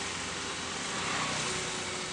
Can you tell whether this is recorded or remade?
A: recorded